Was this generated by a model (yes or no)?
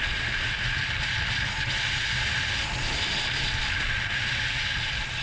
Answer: no